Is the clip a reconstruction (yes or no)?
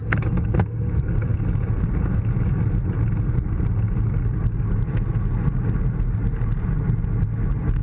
no